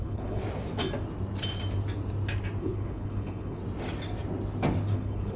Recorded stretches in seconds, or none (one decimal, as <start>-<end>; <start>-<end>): 0.4-2.6; 3.6-4.9